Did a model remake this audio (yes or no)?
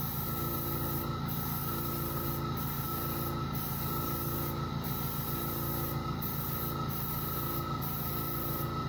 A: no